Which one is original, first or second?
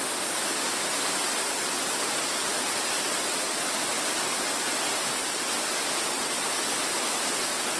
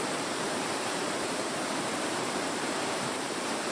first